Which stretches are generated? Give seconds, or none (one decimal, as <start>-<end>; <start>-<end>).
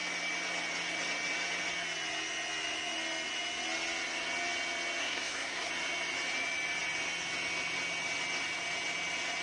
5.0-5.7